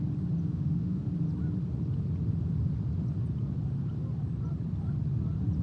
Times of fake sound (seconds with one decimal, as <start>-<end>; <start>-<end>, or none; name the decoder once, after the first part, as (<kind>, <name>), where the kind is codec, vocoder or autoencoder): 0.4-1.1 (autoencoder, DAC-VAE)